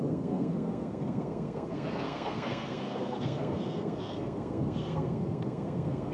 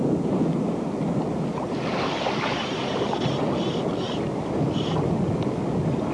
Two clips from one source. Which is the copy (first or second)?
first